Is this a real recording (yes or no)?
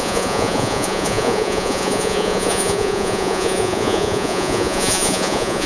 no